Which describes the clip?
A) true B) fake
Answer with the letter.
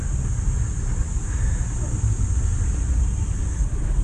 A